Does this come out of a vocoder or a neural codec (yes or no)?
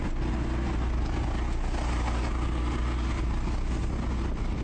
no